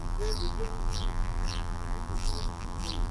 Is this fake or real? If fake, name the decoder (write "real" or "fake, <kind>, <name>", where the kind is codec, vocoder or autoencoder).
fake, vocoder, BigVGAN v2